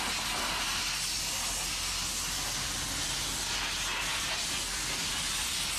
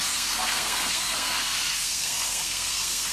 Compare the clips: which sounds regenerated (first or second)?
second